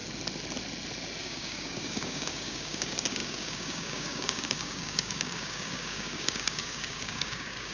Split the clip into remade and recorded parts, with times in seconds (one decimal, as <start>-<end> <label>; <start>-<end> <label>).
0.0-1.2 recorded; 1.2-7.7 remade